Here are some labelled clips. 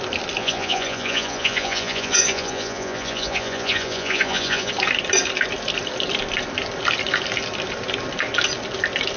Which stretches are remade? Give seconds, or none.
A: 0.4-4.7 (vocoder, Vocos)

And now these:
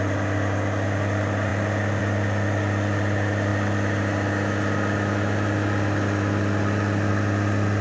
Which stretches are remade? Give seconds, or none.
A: none

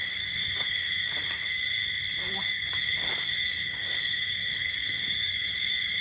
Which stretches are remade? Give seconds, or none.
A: 0.0-1.8 (codec, DAC); 2.3-6.0

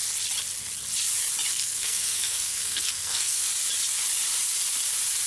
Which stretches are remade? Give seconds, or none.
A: 1.5-3.4 (codec, SNAC)